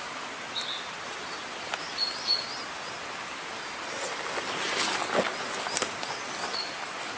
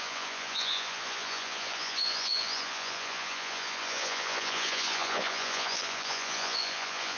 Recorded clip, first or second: first